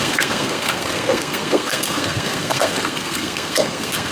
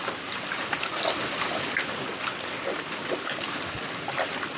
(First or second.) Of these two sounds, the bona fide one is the second